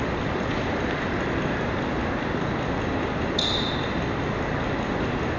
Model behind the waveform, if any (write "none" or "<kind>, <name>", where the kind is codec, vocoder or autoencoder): none